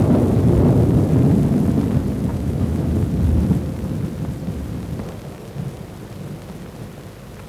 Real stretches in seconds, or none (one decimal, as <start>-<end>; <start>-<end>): 0.0-2.3; 2.9-7.5